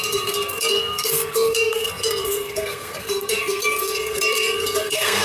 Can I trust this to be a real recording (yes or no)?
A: no